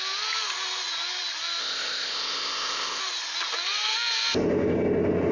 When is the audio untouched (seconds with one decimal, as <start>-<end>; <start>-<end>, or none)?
0.0-1.6; 3.0-5.3